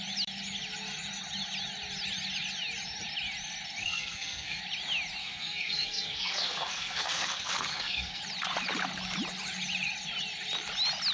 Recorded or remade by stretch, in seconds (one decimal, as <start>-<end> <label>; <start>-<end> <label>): 0.0-3.8 recorded; 3.8-4.6 remade; 4.6-5.2 recorded; 5.2-8.2 remade; 8.2-11.1 recorded